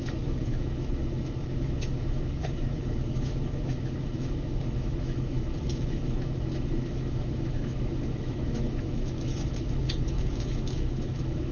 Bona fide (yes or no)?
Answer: no